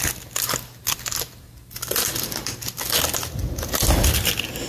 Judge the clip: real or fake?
real